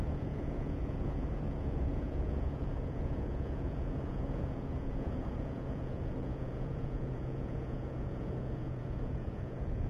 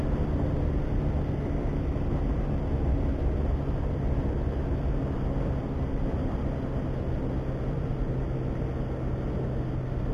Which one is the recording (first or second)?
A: second